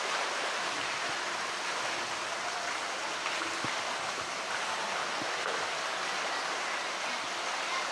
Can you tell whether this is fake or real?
real